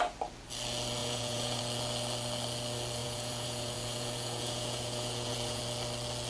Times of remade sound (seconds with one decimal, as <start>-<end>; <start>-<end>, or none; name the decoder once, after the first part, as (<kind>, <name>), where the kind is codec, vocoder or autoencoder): 1.0-1.6 (vocoder, Vocos); 3.0-5.6